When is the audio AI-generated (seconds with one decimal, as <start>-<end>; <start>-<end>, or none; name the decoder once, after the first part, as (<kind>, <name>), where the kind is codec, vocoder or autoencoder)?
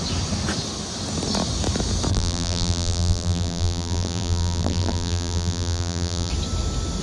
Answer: 2.1-6.3 (vocoder, BigVGAN v2)